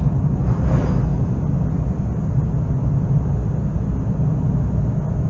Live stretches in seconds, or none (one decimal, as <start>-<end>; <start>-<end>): 0.0-5.3